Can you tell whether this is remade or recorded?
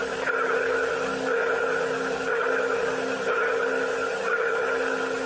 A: recorded